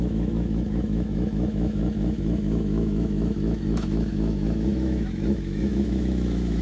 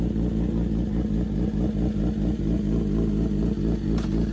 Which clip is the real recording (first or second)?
second